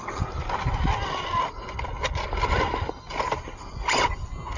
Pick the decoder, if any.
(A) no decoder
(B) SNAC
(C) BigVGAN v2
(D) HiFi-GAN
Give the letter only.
A